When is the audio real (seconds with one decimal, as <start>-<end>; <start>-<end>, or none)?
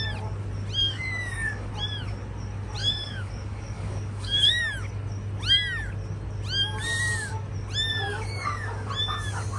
0.0-0.8; 1.7-2.8; 4.6-8.1; 8.9-9.6